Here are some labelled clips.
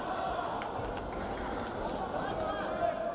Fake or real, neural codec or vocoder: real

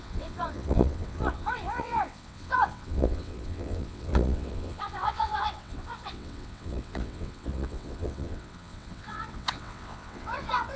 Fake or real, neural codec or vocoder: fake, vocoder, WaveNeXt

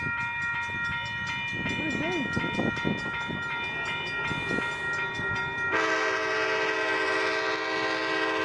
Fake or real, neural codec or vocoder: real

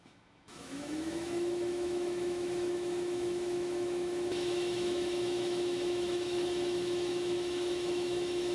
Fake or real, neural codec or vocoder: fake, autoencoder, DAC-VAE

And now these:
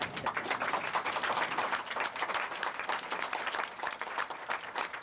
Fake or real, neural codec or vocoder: real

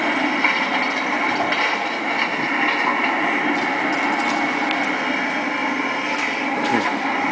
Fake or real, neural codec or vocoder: real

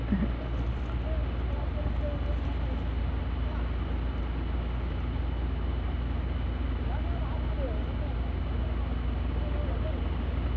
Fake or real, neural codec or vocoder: real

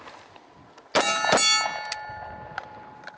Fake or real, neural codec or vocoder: real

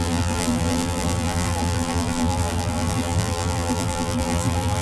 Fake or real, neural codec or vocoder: fake, vocoder, BigVGAN v2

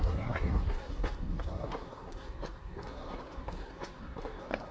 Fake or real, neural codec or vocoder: fake, codec, SNAC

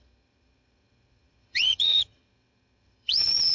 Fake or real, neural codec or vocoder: fake, vocoder, HiFi-GAN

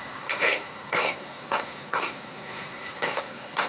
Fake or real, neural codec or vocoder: fake, codec, SNAC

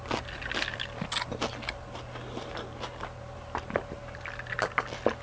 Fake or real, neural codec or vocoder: real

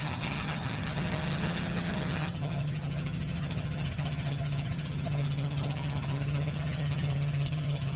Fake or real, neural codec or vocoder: fake, vocoder, HiFi-GAN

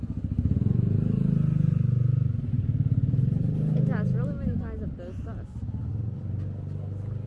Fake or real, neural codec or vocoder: real